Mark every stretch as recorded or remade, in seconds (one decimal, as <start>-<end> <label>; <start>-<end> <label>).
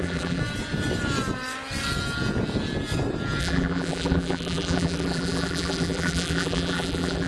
0.0-0.4 remade; 0.4-3.4 recorded; 3.4-7.3 remade